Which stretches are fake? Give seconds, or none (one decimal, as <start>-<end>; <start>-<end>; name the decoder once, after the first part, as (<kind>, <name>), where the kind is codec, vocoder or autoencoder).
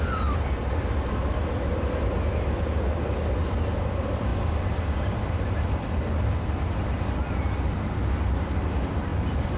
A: none